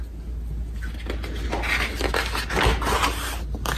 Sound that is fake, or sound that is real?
real